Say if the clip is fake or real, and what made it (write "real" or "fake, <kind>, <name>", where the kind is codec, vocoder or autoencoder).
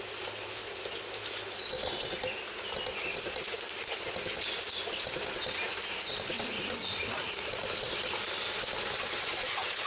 real